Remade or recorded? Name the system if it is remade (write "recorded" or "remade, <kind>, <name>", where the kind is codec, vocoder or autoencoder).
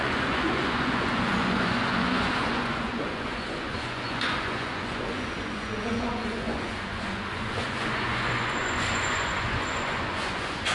remade, vocoder, Vocos